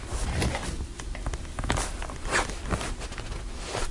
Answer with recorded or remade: recorded